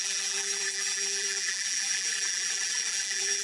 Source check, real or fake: fake